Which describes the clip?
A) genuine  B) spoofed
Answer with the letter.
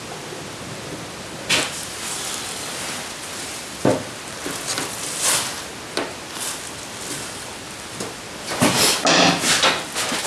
A